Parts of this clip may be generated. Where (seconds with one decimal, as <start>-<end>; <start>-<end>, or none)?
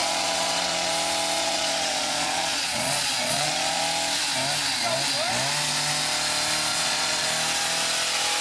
0.0-0.9; 1.4-3.8; 6.7-7.3